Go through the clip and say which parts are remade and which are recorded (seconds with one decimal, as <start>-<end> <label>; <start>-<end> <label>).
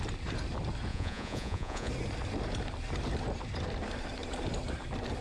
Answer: 0.0-0.9 recorded; 0.9-1.9 remade; 1.9-5.2 recorded